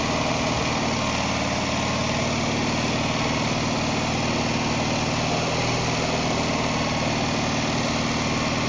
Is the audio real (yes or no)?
yes